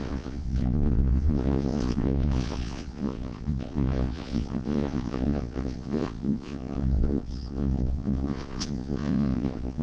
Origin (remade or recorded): remade